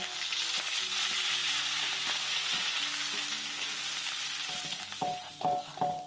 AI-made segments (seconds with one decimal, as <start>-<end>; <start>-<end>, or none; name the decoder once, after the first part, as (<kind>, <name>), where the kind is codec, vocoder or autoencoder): 1.4-2.7 (vocoder, Vocos)